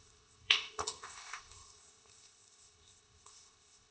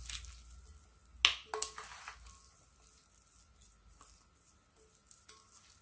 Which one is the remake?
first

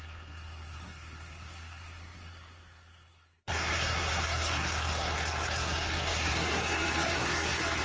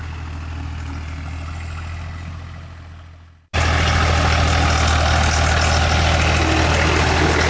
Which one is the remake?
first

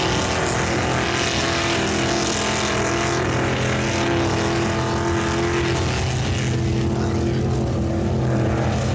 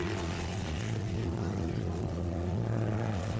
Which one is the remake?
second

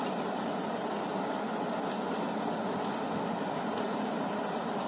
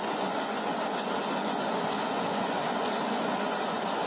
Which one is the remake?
second